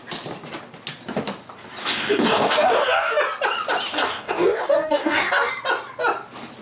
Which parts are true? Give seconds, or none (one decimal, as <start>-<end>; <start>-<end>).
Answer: 0.0-1.8; 3.2-3.9; 5.5-6.6